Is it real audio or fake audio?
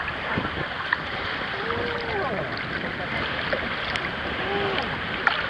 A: real